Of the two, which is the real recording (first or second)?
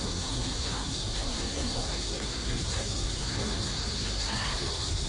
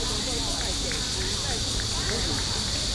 second